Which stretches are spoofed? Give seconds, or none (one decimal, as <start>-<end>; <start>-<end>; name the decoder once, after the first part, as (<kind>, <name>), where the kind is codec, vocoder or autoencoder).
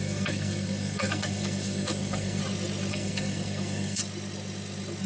0.0-2.4 (codec, SNAC); 2.9-4.0